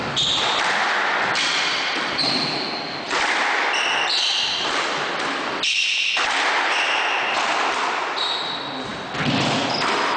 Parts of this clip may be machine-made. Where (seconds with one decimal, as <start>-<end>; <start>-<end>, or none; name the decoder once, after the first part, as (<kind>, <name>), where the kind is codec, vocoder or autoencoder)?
none